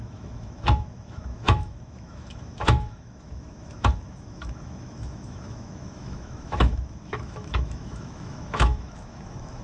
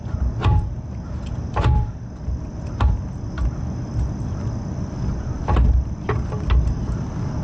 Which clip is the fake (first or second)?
first